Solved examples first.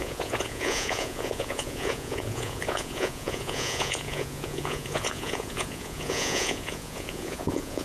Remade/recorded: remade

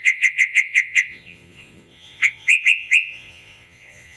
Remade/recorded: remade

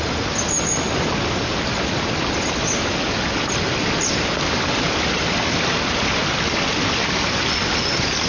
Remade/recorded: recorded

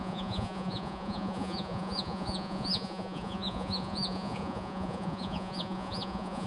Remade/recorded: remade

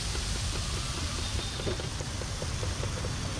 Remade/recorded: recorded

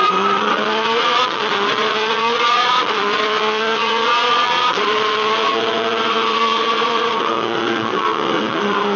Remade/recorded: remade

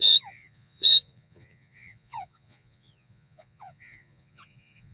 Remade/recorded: remade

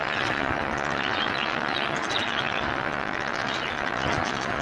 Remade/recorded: remade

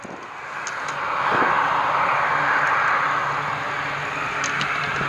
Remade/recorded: recorded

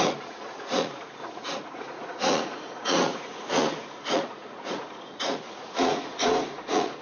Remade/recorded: remade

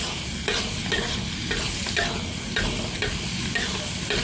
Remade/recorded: recorded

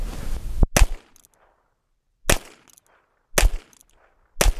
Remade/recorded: recorded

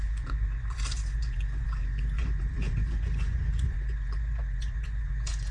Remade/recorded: remade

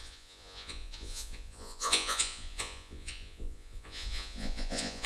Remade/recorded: remade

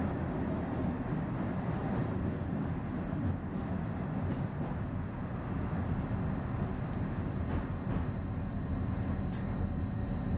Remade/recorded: recorded